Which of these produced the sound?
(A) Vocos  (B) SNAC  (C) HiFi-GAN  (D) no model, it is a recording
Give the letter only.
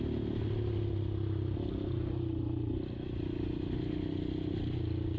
D